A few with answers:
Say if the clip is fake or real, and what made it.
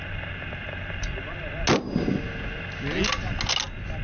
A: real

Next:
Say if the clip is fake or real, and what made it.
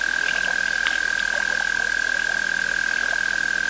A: real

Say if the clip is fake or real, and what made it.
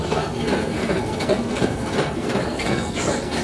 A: fake, codec, SNAC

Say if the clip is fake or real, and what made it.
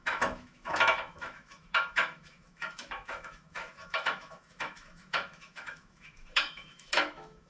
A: fake, autoencoder, DAC-VAE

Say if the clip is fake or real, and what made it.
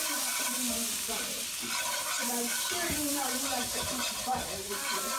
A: fake, vocoder, BigVGAN v2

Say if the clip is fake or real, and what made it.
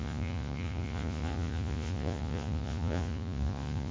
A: fake, vocoder, Vocos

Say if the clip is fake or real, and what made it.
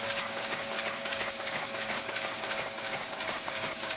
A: fake, codec, DAC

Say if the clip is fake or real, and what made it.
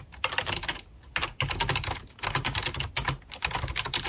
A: real